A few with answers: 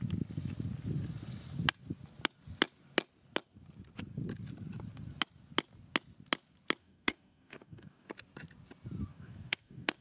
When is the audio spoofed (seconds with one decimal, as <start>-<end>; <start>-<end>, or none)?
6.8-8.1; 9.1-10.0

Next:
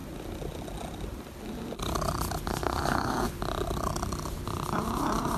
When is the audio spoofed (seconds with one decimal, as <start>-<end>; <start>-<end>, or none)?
2.5-3.2

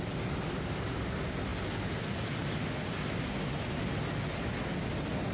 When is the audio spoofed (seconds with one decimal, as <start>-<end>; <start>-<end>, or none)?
none